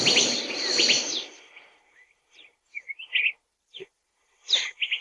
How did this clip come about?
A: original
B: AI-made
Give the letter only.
A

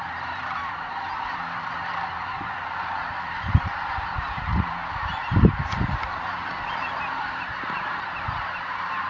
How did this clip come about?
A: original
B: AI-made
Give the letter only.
B